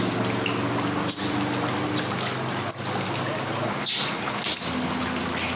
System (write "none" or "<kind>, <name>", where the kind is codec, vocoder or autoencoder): none